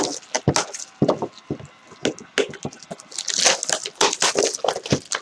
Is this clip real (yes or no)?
yes